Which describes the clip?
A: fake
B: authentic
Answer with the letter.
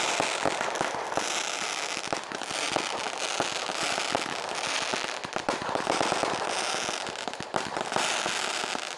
B